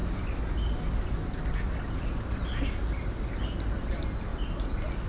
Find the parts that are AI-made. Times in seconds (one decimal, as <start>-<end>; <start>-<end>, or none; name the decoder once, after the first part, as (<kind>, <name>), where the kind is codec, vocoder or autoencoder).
none